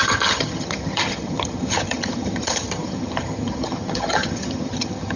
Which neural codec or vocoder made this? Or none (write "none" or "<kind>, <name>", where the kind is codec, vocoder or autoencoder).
vocoder, HiFi-GAN